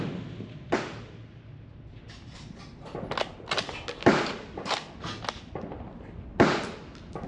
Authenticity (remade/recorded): recorded